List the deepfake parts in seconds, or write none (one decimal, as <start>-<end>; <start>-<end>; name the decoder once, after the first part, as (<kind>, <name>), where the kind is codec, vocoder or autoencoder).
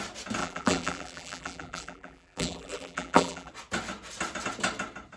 0.4-3.5 (vocoder, BigVGAN v2)